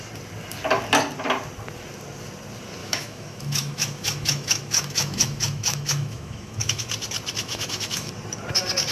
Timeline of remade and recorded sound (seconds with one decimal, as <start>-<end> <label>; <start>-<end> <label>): 0.0-2.8 recorded; 2.8-6.9 remade; 6.9-7.4 recorded; 7.4-8.1 remade; 8.1-8.9 recorded